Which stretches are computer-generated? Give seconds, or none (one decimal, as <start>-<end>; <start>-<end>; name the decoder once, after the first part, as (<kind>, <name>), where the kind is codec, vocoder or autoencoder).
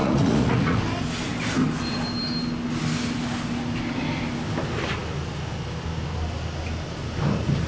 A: 0.0-0.8 (vocoder, Vocos)